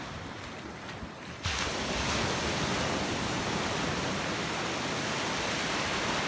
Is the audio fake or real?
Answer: real